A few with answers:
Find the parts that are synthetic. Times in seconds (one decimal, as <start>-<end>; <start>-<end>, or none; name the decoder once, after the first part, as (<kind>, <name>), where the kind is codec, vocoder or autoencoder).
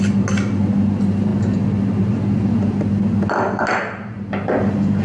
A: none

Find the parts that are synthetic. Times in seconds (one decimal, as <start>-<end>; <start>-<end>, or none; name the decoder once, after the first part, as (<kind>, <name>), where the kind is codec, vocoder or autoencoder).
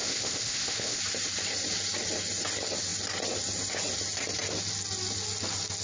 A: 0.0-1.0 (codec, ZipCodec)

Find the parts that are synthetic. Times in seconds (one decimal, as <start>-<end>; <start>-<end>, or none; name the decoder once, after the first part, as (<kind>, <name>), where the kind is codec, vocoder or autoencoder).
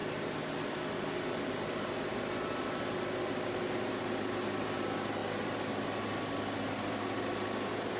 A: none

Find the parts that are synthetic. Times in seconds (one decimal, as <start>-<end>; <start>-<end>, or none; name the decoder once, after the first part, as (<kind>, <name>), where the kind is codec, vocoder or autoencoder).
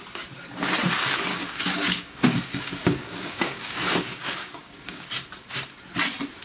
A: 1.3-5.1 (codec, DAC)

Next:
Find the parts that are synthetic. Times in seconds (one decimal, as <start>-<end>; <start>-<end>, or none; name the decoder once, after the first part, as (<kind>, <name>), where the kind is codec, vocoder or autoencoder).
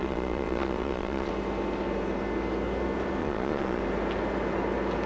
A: 0.0-1.3 (vocoder, Vocos); 3.2-3.8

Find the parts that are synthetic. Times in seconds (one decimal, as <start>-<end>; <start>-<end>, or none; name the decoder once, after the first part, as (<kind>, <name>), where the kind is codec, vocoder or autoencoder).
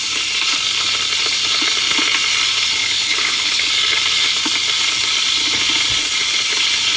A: 2.8-3.6 (codec, HILCodec)